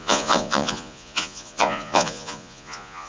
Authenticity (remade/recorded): remade